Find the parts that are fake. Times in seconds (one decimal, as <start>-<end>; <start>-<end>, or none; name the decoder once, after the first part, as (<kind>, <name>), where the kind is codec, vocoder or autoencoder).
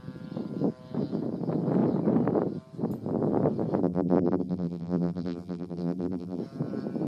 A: 3.8-6.4 (vocoder, BigVGAN v2)